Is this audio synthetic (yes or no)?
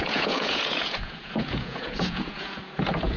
yes